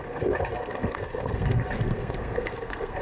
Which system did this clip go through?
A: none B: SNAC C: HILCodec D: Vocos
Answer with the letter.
B